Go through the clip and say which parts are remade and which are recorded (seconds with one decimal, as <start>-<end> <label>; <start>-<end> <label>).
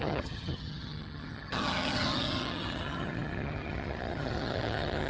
0.0-5.1 remade